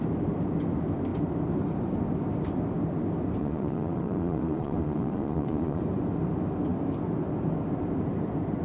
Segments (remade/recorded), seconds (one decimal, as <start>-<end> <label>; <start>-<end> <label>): 0.0-3.4 recorded; 3.4-5.8 remade; 5.8-8.6 recorded

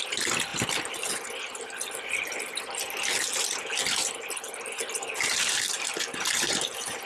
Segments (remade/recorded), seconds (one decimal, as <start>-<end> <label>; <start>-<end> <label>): 0.0-7.0 recorded

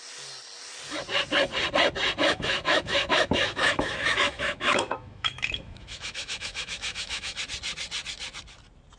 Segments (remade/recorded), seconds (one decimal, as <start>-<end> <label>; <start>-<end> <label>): 0.0-2.2 recorded; 2.2-7.4 remade; 7.4-9.0 recorded

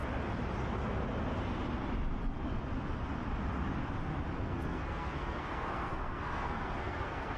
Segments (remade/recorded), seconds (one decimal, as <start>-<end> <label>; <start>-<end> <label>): 0.0-4.4 recorded; 4.4-7.4 remade